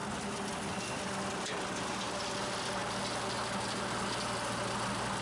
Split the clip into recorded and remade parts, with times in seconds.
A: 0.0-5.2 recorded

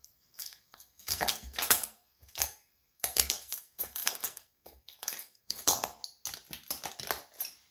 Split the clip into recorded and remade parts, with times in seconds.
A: 0.0-6.0 remade; 6.0-7.7 recorded

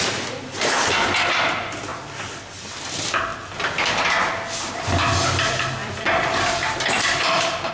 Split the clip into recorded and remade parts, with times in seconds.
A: 0.0-1.9 recorded; 1.9-2.8 remade; 2.8-5.8 recorded; 5.8-7.7 remade

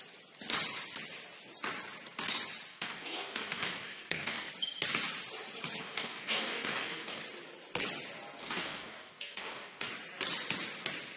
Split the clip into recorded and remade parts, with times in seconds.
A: 0.0-2.7 recorded; 2.7-4.5 remade; 4.5-5.8 recorded; 5.8-7.2 remade; 7.2-8.4 recorded; 8.4-9.9 remade; 9.9-11.2 recorded